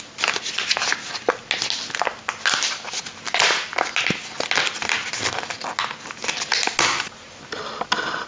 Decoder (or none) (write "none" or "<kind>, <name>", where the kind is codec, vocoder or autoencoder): none